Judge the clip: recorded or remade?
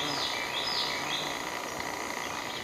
recorded